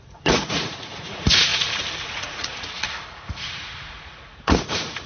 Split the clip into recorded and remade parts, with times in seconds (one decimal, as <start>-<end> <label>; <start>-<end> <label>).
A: 0.0-5.1 remade